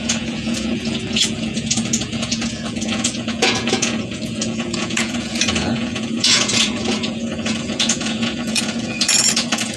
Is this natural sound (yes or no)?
no